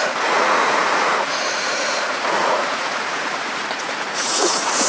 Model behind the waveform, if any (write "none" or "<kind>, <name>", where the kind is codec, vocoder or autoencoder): vocoder, Vocos